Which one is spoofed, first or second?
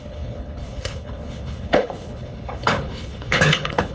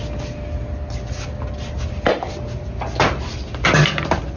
first